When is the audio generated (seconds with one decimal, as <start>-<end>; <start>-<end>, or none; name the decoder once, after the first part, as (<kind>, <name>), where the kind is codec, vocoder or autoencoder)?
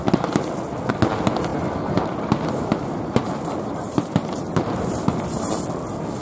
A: 1.5-2.3 (vocoder, BigVGAN v2); 2.7-5.1